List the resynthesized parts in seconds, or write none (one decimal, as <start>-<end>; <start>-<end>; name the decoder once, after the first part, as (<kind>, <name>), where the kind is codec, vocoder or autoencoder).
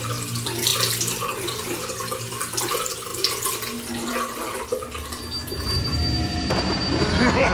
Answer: none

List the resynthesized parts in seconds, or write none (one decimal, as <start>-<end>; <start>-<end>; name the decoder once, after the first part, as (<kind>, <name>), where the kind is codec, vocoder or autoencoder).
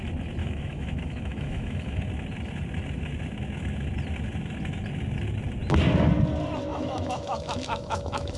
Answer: 0.4-2.0 (autoencoder, DAC-VAE); 6.7-8.4